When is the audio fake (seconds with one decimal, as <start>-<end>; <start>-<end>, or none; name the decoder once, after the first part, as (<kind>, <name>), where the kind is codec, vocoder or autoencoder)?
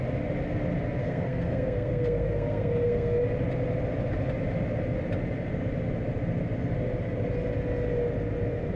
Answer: 1.0-3.2 (codec, SNAC)